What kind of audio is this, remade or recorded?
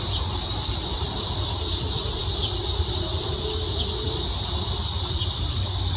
remade